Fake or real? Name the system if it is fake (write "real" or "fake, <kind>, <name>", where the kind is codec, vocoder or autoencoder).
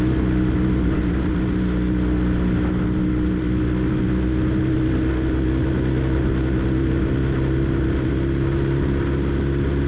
real